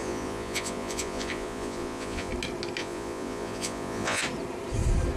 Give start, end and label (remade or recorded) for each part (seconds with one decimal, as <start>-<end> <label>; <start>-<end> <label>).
0.0-2.3 remade; 2.3-2.8 recorded; 2.8-4.2 remade; 4.2-5.2 recorded